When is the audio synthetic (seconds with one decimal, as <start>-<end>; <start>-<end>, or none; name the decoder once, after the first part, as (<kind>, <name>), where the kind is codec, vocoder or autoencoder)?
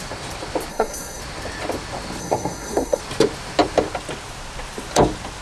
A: 0.7-1.2 (codec, SNAC); 2.2-3.0